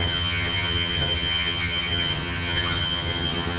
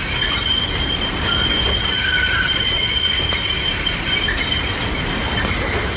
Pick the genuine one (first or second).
second